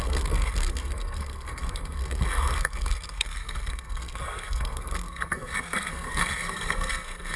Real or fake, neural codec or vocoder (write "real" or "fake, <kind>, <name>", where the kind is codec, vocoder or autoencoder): fake, codec, SNAC